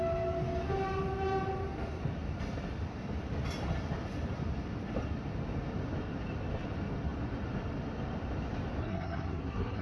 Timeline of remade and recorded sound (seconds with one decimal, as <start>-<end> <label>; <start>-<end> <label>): 0.0-8.8 recorded; 8.8-9.8 remade